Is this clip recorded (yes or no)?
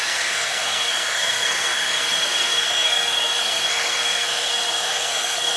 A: no